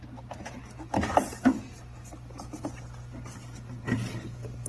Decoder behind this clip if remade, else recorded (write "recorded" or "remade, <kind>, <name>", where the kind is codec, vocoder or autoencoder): recorded